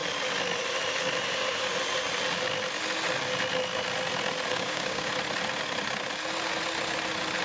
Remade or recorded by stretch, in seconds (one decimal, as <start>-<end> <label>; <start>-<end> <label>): 0.0-4.5 recorded; 4.5-5.1 remade; 5.1-7.4 recorded